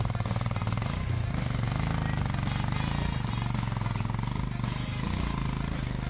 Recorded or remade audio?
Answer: recorded